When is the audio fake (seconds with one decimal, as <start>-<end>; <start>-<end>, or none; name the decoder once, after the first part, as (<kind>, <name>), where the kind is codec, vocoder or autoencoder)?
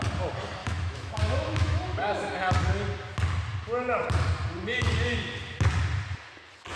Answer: 0.6-2.5 (autoencoder, DAC-VAE)